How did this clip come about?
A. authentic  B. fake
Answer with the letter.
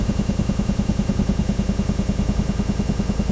B